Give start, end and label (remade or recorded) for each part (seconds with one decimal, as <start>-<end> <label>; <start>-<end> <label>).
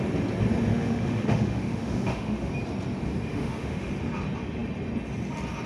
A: 0.0-0.7 recorded; 0.7-2.5 remade; 2.5-3.3 recorded; 3.3-3.9 remade; 3.9-5.7 recorded